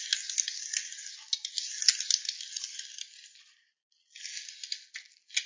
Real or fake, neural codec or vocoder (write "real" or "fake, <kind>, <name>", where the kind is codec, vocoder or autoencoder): real